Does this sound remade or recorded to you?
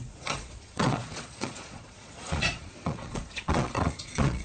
remade